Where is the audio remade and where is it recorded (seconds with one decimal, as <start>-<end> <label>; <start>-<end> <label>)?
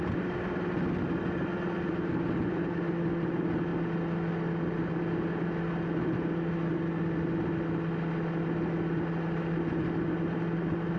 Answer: 0.0-11.0 recorded